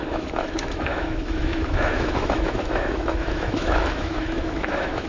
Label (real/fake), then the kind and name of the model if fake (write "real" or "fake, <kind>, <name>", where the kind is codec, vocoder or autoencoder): fake, autoencoder, DAC-VAE